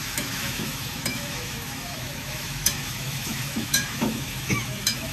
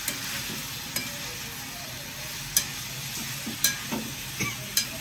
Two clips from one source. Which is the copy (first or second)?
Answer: first